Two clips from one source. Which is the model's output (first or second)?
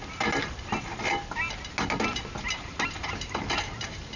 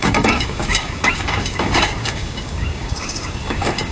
second